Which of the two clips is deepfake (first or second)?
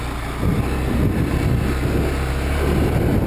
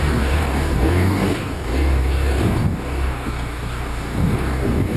second